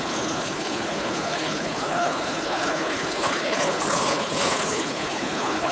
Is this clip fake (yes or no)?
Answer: yes